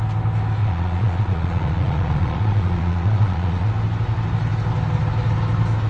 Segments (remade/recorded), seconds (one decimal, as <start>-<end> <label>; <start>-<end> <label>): 0.0-0.6 recorded; 0.6-3.7 remade; 3.7-5.9 recorded